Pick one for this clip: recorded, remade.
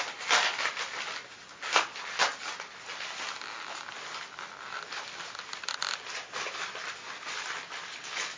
recorded